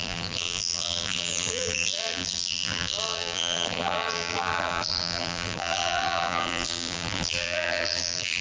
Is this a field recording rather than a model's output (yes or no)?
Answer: no